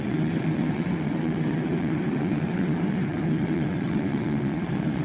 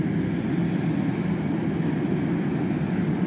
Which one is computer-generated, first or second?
first